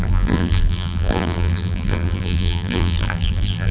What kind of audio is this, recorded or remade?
remade